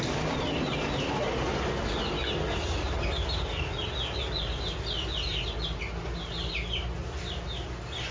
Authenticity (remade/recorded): recorded